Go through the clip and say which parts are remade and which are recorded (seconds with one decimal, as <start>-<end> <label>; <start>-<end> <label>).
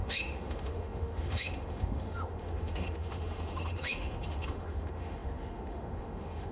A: 0.0-6.5 remade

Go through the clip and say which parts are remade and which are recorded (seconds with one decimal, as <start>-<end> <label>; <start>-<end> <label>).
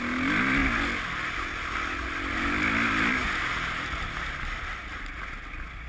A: 0.0-5.9 recorded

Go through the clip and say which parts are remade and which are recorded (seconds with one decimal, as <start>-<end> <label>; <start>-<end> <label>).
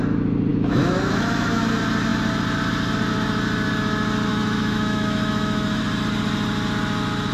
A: 0.0-0.5 recorded; 0.5-1.6 remade; 1.6-4.3 recorded; 4.3-5.8 remade; 5.8-7.3 recorded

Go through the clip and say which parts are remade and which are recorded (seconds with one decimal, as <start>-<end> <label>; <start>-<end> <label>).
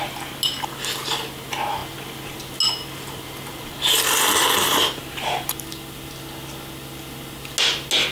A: 0.0-8.1 recorded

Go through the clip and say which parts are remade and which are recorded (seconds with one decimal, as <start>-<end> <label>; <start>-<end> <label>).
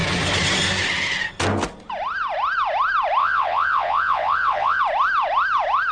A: 0.0-3.2 recorded; 3.2-4.8 remade; 4.8-5.9 recorded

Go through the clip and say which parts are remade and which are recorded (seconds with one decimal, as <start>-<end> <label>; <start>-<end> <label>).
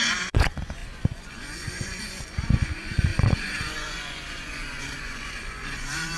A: 0.0-6.2 remade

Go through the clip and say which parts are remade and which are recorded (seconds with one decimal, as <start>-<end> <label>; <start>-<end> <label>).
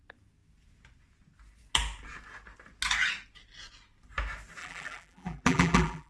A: 0.0-4.6 recorded; 4.6-6.1 remade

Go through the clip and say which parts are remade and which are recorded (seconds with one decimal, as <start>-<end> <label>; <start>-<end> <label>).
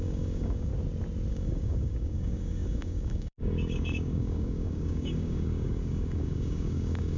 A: 0.0-0.7 remade; 0.7-1.3 recorded; 1.3-7.2 remade